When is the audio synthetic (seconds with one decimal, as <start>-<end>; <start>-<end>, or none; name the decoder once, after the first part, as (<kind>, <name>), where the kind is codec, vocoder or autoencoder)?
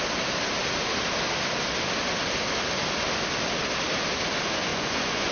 4.7-5.3 (vocoder, Vocos)